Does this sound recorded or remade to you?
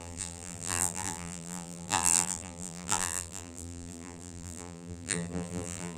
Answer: remade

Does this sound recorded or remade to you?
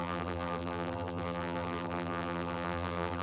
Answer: remade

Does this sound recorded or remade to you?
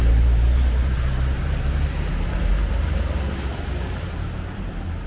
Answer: remade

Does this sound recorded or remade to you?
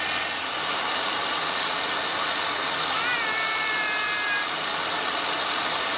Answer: recorded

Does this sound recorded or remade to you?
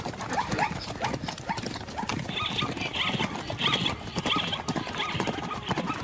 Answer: recorded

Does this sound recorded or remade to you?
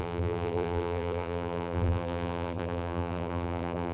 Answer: remade